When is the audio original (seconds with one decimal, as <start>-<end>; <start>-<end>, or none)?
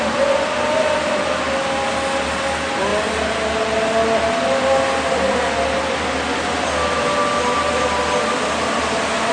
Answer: 0.0-9.3